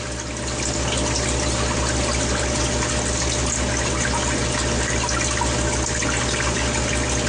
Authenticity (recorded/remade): recorded